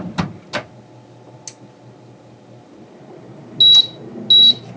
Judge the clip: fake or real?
real